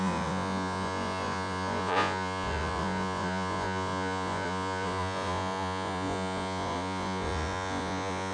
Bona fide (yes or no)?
no